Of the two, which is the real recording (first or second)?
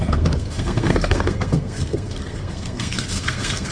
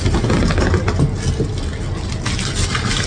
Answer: second